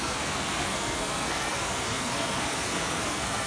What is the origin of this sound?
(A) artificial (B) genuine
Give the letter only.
A